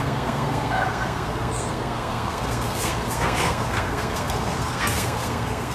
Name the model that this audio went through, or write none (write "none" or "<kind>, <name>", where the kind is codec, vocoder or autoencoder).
codec, SNAC